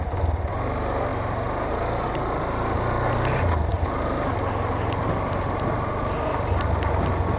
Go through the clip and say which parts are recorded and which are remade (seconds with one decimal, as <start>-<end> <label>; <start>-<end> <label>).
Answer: 0.0-7.4 recorded